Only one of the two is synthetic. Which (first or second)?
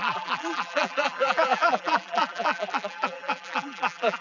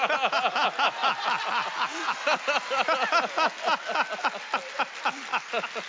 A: first